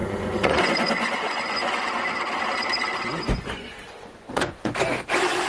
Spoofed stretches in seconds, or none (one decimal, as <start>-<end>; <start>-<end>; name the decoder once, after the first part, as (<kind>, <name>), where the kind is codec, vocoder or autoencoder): 0.0-1.8 (vocoder, Vocos); 3.1-4.7